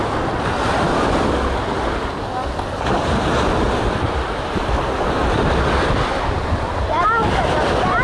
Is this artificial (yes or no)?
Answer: no